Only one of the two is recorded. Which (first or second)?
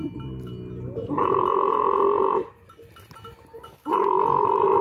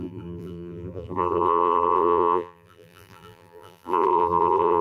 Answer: first